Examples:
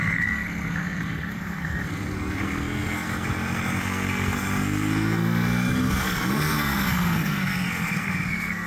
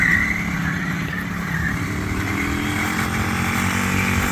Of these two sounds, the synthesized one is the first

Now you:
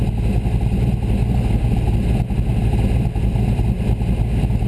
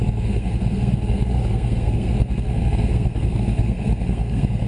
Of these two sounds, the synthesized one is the second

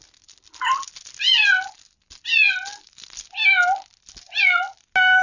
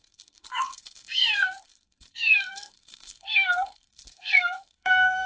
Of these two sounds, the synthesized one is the second